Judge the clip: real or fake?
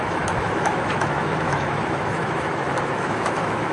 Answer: fake